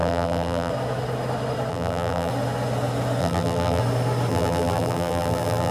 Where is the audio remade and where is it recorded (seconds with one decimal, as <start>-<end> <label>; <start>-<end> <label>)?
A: 0.0-0.7 remade; 0.7-1.7 recorded; 1.7-2.3 remade; 2.3-3.2 recorded; 3.2-3.8 remade; 3.8-4.3 recorded; 4.3-5.7 remade